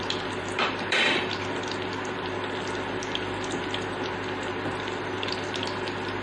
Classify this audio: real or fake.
fake